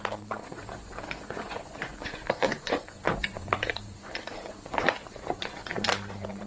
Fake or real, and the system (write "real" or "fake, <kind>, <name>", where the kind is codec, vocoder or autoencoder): fake, vocoder, Vocos